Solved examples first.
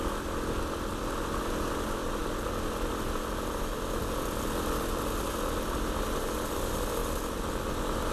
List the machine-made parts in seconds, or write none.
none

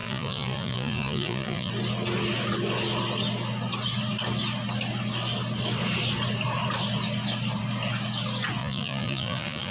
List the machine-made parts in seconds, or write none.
0.0-1.7 (vocoder, Vocos); 8.6-9.7

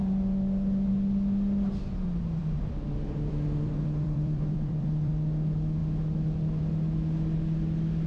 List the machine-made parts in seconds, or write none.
2.4-5.1 (vocoder, BigVGAN v2)

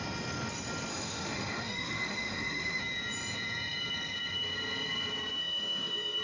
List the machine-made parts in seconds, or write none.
0.9-2.8 (autoencoder, DAC-VAE); 5.4-6.2